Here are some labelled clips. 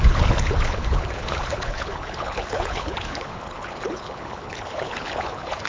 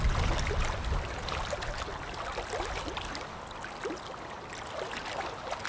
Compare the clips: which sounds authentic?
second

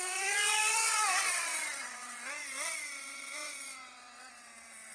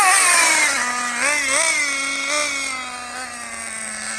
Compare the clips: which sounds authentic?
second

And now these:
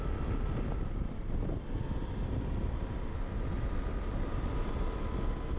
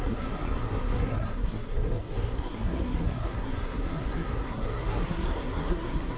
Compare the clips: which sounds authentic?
first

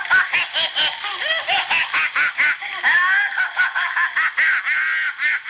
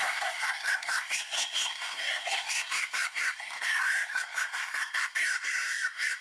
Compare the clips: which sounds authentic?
first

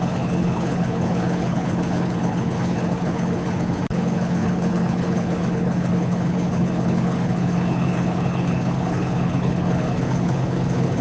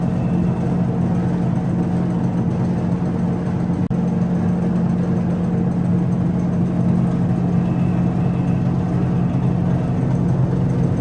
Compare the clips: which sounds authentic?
second